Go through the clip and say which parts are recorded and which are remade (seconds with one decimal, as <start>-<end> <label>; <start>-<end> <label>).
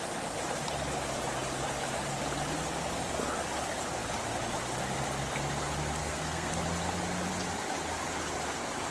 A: 0.0-6.0 recorded; 6.0-6.5 remade; 6.5-8.9 recorded